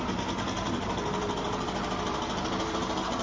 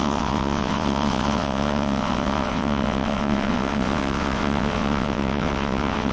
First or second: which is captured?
first